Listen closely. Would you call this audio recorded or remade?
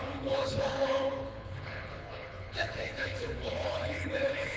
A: remade